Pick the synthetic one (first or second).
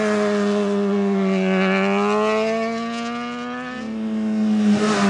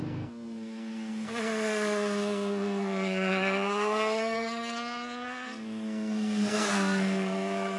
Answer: second